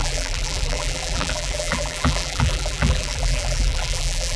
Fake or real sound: fake